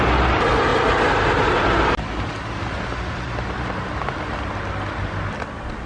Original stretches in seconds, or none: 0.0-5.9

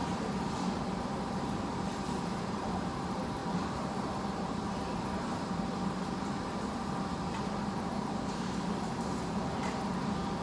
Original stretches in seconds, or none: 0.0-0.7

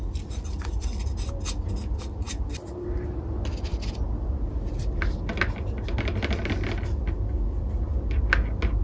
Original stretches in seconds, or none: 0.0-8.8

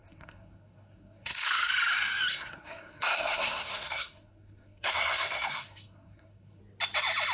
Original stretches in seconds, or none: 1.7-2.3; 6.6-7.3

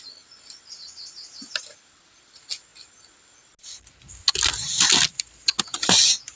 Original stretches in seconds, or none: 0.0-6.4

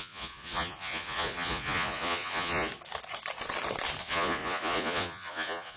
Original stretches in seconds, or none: 2.7-4.0